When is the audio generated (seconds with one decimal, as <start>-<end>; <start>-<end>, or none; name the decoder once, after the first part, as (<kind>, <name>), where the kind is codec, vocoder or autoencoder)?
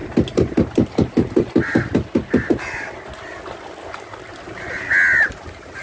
none